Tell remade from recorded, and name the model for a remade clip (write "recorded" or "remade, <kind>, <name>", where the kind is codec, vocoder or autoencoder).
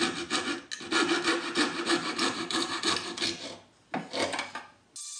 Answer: recorded